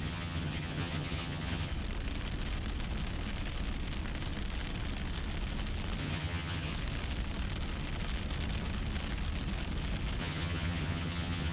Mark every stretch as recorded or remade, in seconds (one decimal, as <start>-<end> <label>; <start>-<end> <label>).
0.0-1.7 remade; 1.7-6.0 recorded; 6.0-6.7 remade; 6.7-10.2 recorded; 10.2-11.5 remade